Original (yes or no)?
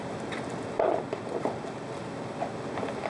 yes